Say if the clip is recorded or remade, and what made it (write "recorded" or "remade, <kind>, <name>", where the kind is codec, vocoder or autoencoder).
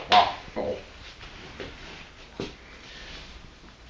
recorded